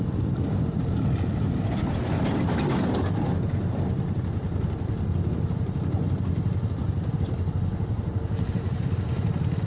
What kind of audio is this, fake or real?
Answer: real